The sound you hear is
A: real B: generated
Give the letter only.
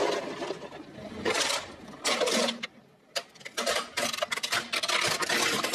B